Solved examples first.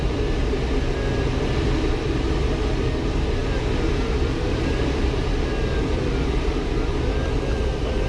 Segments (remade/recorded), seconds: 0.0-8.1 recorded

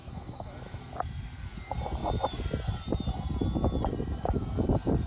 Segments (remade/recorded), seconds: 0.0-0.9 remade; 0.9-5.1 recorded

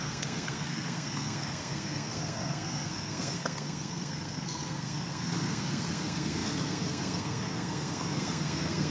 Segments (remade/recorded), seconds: 0.0-8.9 remade

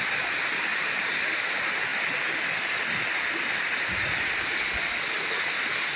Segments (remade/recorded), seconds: 0.0-0.7 recorded; 0.7-1.3 remade; 1.3-6.0 recorded

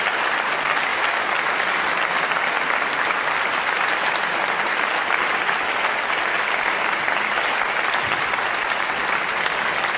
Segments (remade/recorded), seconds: 0.0-10.0 recorded

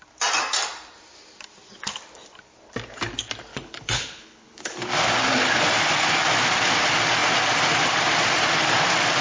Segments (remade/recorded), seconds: 0.0-3.5 recorded; 3.5-4.9 remade; 4.9-9.2 recorded

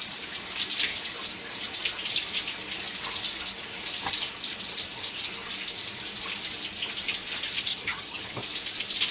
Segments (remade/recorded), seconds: 0.0-7.7 recorded; 7.7-8.3 remade; 8.3-9.1 recorded

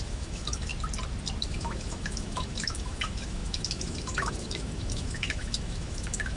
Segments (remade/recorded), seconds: 0.0-0.7 remade; 0.7-1.4 recorded; 1.4-6.4 remade